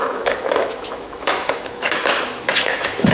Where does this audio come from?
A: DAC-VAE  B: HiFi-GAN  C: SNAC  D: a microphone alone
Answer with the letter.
A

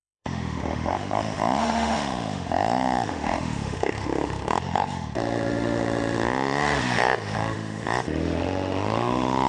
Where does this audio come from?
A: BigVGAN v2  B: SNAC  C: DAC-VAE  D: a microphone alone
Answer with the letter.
C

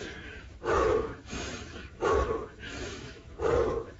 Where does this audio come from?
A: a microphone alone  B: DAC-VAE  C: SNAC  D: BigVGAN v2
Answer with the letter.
B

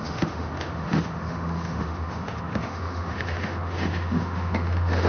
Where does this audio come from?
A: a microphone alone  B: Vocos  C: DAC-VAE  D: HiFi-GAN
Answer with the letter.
C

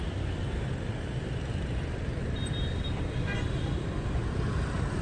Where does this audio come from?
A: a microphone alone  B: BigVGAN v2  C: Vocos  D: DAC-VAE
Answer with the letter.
A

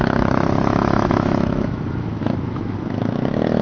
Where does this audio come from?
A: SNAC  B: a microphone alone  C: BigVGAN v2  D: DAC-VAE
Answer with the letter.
D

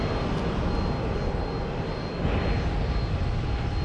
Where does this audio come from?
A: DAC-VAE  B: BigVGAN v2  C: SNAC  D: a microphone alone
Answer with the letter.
D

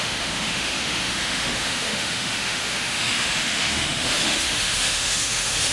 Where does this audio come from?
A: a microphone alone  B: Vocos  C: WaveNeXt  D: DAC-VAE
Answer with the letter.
D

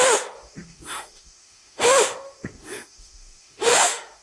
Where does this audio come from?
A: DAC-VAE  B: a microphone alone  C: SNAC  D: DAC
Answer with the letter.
A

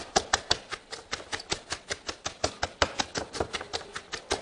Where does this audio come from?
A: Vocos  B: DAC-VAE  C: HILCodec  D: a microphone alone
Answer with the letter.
D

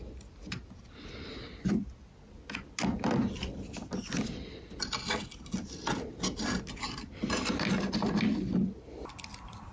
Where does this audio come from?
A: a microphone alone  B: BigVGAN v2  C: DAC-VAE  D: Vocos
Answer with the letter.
A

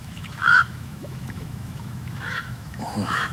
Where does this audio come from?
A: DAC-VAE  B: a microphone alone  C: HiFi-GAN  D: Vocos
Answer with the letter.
A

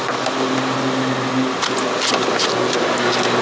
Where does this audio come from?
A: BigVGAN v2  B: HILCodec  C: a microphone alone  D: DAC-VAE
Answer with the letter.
C